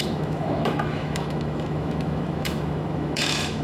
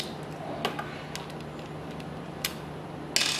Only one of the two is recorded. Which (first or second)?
second